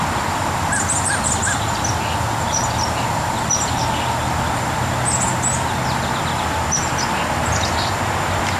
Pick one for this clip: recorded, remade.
recorded